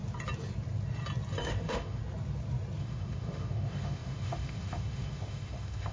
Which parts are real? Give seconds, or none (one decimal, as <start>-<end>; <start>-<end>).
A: 0.0-1.4; 2.0-2.8